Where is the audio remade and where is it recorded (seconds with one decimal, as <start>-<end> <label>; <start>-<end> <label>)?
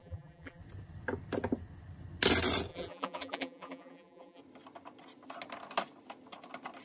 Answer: 0.0-0.6 remade; 0.6-2.7 recorded; 2.7-4.4 remade; 4.4-6.8 recorded